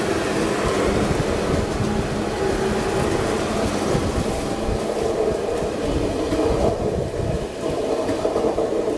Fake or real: real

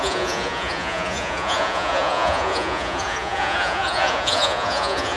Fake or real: fake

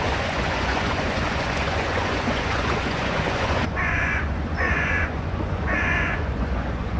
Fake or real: fake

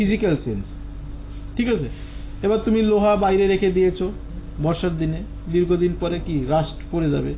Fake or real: real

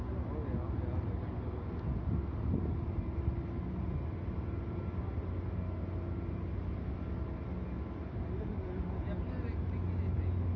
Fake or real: real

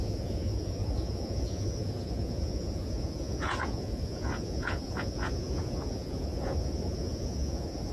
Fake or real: fake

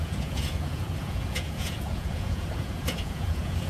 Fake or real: fake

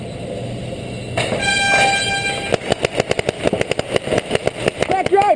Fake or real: real